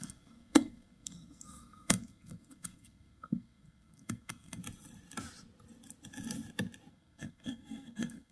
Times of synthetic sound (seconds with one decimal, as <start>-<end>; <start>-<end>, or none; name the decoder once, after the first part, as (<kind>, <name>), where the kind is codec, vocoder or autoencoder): 0.0-4.6 (codec, SNAC); 6.9-8.3